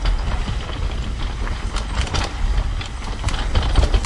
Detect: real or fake real